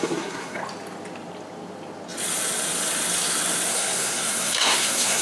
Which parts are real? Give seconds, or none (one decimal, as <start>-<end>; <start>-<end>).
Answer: 0.6-3.7